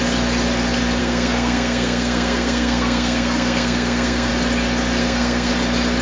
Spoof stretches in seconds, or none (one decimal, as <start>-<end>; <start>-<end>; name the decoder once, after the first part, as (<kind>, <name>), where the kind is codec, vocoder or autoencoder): 1.0-4.3 (codec, SNAC); 5.0-5.5